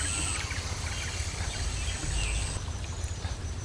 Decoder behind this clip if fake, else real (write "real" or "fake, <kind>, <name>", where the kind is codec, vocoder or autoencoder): real